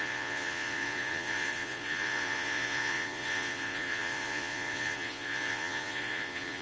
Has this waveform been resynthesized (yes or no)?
yes